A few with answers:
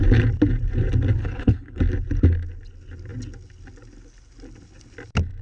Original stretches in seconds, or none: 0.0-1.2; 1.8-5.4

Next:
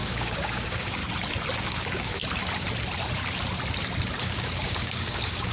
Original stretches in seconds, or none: 1.0-1.6; 2.2-4.2

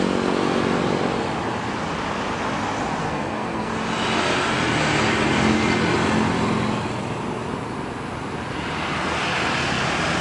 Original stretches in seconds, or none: 0.0-3.0; 3.7-10.2

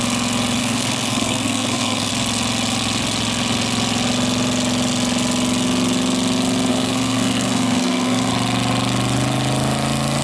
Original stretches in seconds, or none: 0.0-0.6; 2.1-6.7; 8.3-10.2

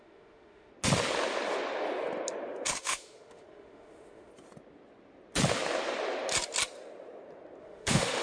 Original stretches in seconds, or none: 0.7-2.7; 4.3-7.6

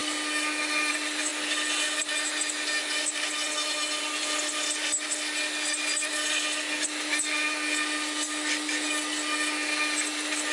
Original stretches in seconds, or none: 0.0-10.5

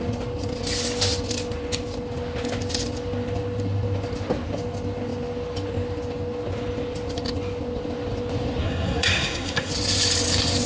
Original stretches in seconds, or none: 0.0-8.6; 9.7-10.7